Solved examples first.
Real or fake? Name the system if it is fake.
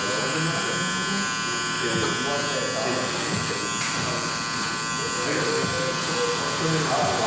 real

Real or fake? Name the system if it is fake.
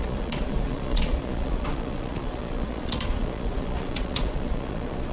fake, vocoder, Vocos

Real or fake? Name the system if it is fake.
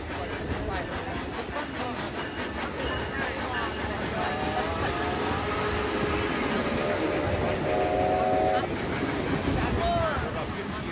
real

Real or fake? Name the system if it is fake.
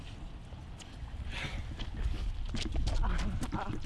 real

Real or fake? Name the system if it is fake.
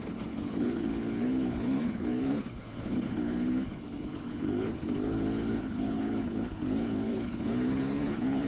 fake, codec, HILCodec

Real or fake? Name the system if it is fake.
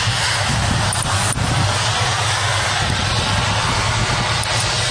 real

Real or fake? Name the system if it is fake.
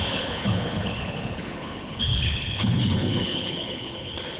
fake, codec, HILCodec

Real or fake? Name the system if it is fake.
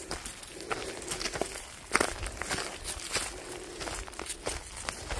real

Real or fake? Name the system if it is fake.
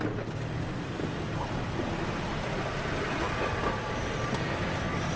real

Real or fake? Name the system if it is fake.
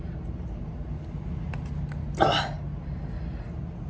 real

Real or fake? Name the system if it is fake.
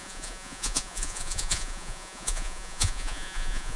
fake, vocoder, Vocos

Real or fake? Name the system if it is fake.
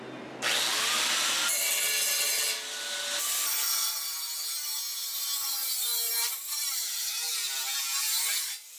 real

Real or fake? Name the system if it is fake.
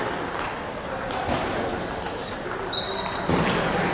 real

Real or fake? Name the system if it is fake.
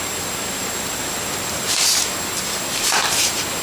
fake, vocoder, BigVGAN v2